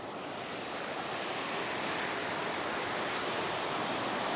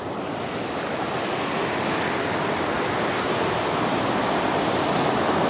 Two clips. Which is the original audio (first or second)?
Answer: second